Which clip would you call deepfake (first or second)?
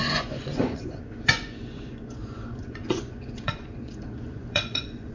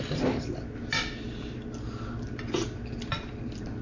first